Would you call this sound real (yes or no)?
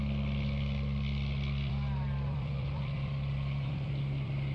no